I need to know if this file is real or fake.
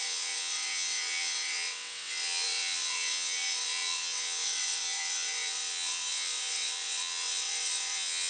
fake